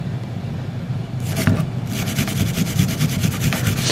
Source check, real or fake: real